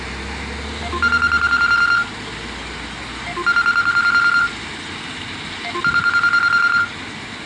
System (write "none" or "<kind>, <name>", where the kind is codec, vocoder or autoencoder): none